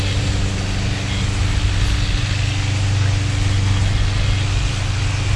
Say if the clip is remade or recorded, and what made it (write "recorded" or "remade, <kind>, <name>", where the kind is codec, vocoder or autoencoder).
recorded